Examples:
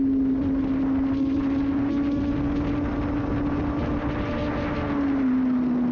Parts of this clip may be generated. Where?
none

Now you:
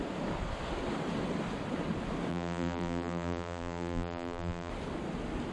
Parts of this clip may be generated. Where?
2.3-4.7 (vocoder, BigVGAN v2)

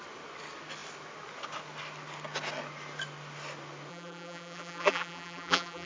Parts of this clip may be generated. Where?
3.9-5.9 (vocoder, BigVGAN v2)

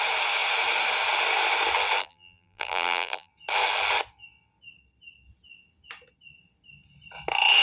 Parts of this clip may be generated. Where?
2.0-3.3 (vocoder, BigVGAN v2)

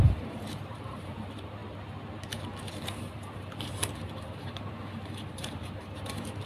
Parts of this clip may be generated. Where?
0.0-1.6 (vocoder, BigVGAN v2); 2.7-6.5